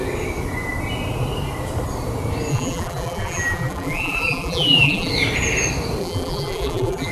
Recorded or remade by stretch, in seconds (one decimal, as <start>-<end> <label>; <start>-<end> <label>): 0.0-2.5 recorded; 2.5-5.1 remade; 5.1-6.0 recorded; 6.0-7.1 remade